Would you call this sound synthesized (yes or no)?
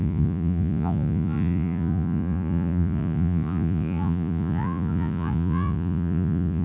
yes